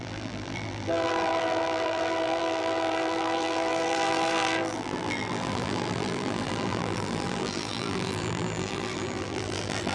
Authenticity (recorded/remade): remade